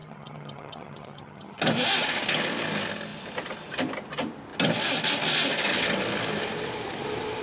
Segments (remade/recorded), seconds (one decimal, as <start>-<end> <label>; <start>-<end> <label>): 0.0-1.6 remade; 1.6-7.4 recorded